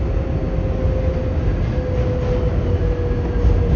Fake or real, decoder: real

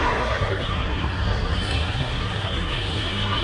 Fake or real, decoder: fake, codec, SNAC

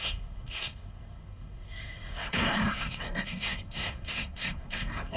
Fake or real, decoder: fake, codec, SNAC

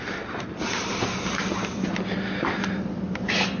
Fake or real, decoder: real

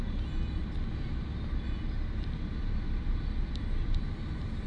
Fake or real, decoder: real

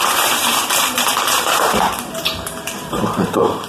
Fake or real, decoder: fake, vocoder, BigVGAN v2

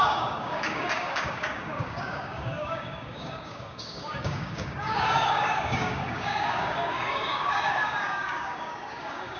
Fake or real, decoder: fake, codec, DAC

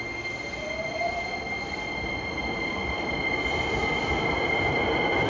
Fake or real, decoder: real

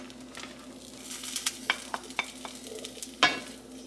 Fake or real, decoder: real